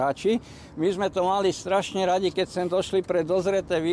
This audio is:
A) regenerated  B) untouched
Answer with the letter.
B